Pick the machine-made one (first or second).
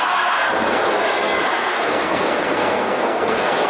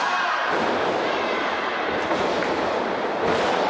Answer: first